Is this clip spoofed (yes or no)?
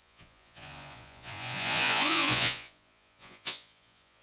yes